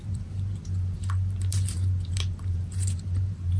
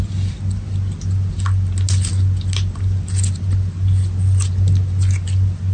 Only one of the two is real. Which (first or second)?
second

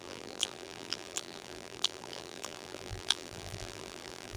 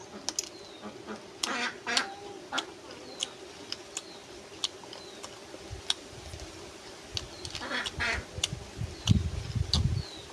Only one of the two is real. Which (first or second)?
second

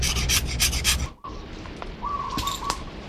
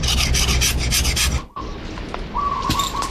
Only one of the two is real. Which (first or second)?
second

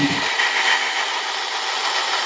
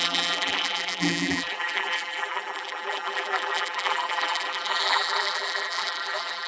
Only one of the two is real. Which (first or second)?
first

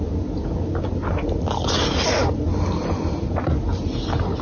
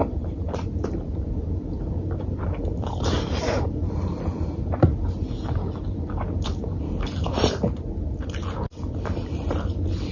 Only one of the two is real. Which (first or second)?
first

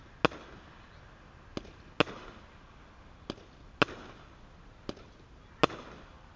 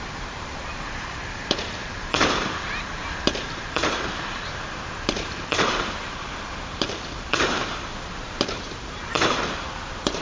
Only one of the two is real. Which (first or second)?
first